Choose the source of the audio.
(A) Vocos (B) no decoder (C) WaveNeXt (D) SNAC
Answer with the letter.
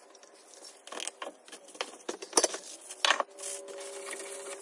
B